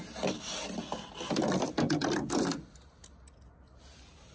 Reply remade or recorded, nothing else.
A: recorded